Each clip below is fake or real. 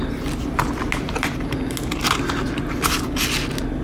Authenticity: real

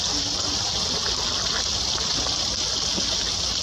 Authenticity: real